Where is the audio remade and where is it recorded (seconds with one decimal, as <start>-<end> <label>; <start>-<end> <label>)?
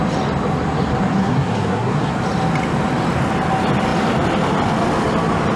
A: 0.0-1.2 recorded; 1.2-2.1 remade; 2.1-5.6 recorded